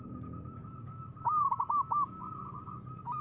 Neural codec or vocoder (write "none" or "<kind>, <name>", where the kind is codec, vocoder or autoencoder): none